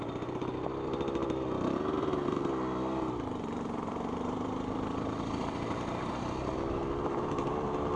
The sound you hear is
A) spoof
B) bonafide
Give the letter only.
A